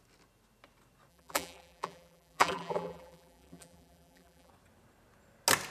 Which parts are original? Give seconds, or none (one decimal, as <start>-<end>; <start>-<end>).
0.0-1.1; 4.5-5.7